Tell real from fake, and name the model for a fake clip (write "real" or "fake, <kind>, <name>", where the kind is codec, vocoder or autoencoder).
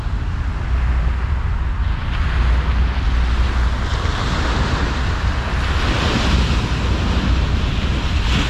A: real